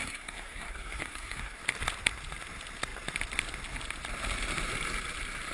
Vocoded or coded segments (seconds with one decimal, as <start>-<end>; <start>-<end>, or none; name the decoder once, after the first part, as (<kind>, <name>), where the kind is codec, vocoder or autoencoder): 0.0-1.6 (codec, SNAC)